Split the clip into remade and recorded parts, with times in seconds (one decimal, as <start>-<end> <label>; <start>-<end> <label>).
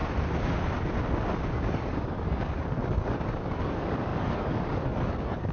0.0-1.5 recorded; 1.5-5.5 remade